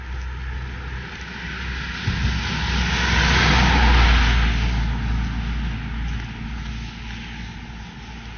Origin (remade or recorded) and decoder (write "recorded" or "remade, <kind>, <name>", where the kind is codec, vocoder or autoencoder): recorded